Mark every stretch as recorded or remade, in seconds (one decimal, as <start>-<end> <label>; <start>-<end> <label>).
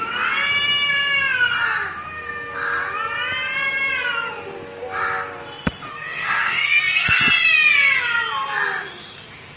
0.0-5.9 recorded; 5.9-7.2 remade; 7.2-9.6 recorded